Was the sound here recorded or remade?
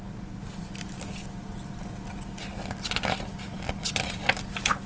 recorded